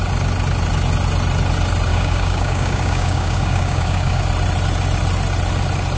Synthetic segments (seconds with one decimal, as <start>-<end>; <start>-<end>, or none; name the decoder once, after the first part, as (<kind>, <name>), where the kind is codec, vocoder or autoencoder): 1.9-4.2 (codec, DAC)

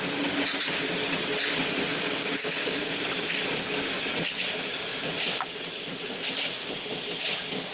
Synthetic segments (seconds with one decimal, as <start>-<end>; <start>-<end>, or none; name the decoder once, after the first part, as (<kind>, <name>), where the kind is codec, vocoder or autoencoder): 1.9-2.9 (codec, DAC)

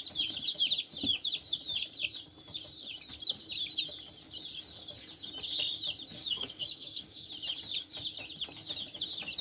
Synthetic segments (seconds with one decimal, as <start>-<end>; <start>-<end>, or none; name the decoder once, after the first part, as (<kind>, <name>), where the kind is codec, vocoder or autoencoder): 6.2-7.3 (codec, DAC)